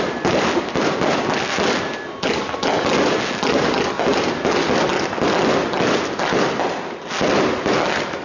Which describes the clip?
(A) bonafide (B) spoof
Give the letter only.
A